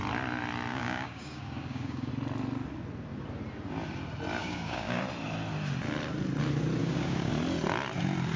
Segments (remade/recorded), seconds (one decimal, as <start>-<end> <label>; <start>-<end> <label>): 0.0-0.7 recorded; 0.7-2.1 remade; 2.1-4.4 recorded; 4.4-5.0 remade; 5.0-6.8 recorded; 6.8-7.3 remade; 7.3-8.4 recorded

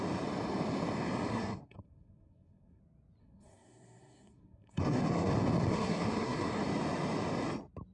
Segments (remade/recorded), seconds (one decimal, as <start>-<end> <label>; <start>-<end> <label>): 0.0-1.3 recorded; 1.3-2.8 remade; 2.8-3.2 recorded; 3.2-5.3 remade; 5.3-5.7 recorded; 5.7-6.6 remade; 6.6-7.9 recorded

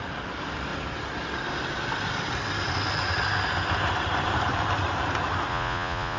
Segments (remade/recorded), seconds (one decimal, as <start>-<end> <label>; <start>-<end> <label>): 0.0-5.5 recorded; 5.5-6.2 remade

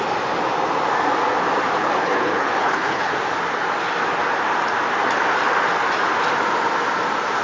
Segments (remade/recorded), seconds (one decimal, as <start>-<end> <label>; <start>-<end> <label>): 0.0-1.8 recorded; 1.8-3.1 remade; 3.1-7.4 recorded

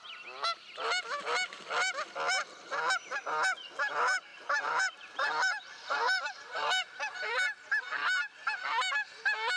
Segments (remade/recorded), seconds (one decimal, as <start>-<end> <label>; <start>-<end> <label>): 0.0-4.3 recorded; 4.3-7.3 remade; 7.3-9.6 recorded

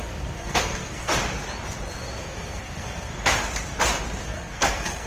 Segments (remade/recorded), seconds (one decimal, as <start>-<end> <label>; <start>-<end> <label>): 0.0-1.1 remade; 1.1-2.2 recorded; 2.2-3.1 remade; 3.1-4.2 recorded; 4.2-5.1 remade

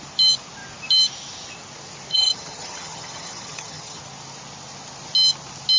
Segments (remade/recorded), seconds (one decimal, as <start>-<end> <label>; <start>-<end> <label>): 0.0-2.1 recorded; 2.1-4.0 remade; 4.0-5.8 recorded

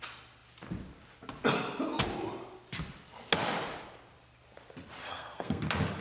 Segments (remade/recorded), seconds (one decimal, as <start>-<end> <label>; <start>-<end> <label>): 0.0-5.0 recorded; 5.0-5.6 remade; 5.6-6.0 recorded